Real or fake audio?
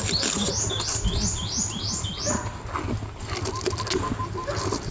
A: real